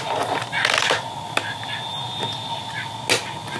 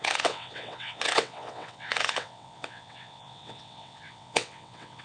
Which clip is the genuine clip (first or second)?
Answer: first